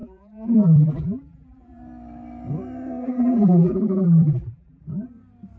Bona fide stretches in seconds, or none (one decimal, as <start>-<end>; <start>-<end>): 1.8-3.0; 4.8-5.6